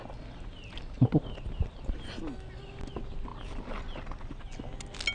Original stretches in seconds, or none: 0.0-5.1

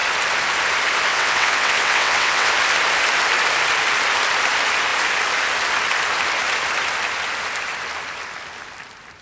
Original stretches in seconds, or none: 0.0-1.1; 2.5-9.2

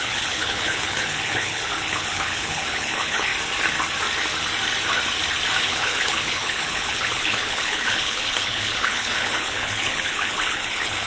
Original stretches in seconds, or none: 3.3-5.6

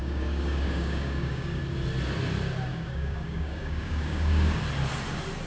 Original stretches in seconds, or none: 1.6-2.7; 4.6-5.5

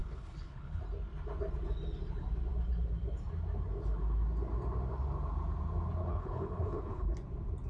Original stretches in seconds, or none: 0.8-6.0; 7.1-7.7

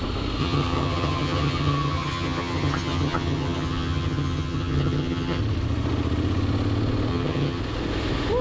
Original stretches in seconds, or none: 0.0-0.4; 5.4-7.1; 7.6-8.4

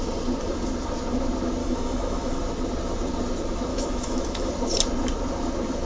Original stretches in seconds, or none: 0.0-1.6; 2.4-3.7; 4.5-5.9